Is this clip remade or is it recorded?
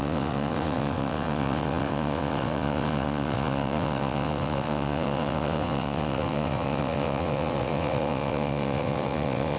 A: remade